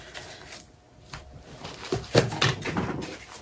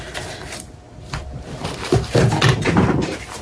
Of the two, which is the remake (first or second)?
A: second